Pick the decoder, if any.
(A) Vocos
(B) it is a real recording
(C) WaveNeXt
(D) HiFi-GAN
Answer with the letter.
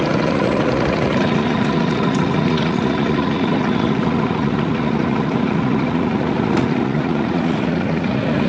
A